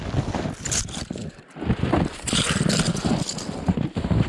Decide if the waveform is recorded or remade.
recorded